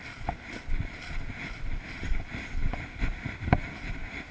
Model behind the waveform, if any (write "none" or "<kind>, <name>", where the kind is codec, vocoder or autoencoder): none